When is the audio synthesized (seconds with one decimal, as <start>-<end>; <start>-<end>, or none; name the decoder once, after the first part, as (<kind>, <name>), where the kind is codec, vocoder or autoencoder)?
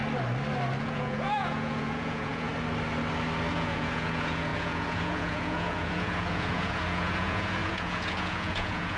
0.8-2.5 (vocoder, Vocos); 3.5-9.0